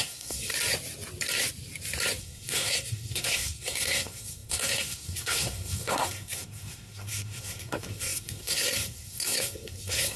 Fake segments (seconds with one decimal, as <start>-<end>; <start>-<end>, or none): 0.0-0.5; 2.2-10.2